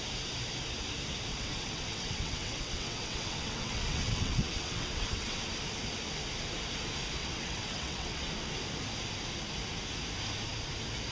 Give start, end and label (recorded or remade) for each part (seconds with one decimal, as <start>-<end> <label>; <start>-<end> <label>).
0.0-1.3 recorded; 1.3-5.4 remade; 5.4-7.2 recorded; 7.2-8.3 remade; 8.3-11.1 recorded